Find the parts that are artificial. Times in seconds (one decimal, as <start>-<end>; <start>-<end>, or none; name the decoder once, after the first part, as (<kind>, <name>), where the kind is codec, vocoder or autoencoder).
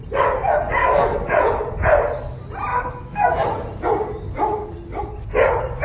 0.8-1.4 (codec, DAC); 2.7-3.3